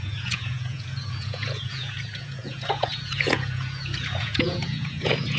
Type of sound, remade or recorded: remade